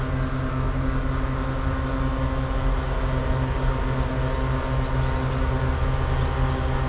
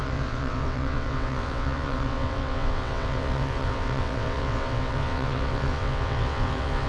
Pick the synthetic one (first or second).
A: second